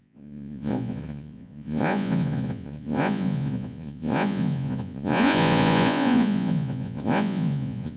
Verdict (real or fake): fake